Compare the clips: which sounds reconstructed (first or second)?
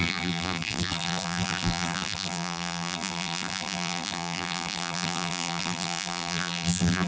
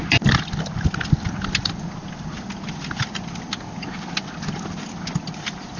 first